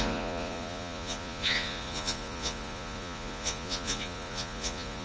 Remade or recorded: remade